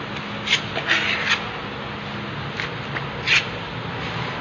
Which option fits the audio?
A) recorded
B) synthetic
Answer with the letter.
A